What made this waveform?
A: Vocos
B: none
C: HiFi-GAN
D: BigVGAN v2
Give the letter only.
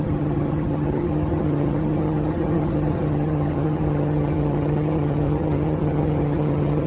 C